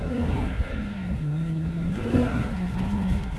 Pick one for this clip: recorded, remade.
remade